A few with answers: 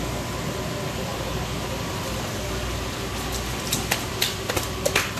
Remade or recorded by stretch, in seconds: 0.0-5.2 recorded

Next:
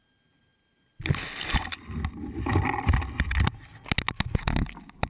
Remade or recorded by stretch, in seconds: 0.0-5.1 recorded

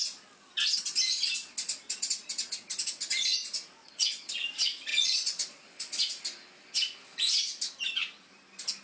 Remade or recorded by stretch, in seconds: 0.0-3.8 recorded; 3.8-4.3 remade; 4.3-4.9 recorded; 4.9-6.0 remade; 6.0-8.8 recorded